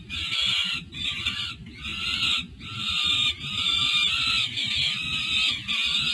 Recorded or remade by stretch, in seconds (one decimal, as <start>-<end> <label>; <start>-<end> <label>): 0.0-6.1 recorded